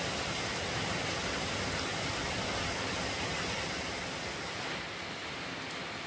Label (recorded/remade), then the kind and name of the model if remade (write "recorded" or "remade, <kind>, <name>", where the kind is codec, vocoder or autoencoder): recorded